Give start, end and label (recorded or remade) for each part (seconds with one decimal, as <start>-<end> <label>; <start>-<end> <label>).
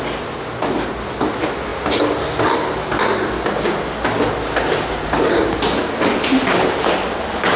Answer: 0.0-7.6 recorded